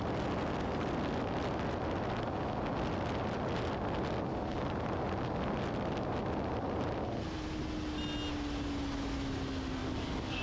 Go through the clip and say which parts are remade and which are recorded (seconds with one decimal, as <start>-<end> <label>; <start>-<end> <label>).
0.0-9.8 recorded; 9.8-10.4 remade